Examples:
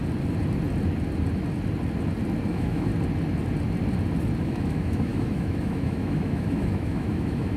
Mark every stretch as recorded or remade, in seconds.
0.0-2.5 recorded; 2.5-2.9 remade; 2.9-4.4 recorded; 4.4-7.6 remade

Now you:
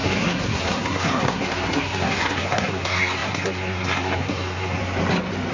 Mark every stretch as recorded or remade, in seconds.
0.0-4.8 remade; 4.8-5.5 recorded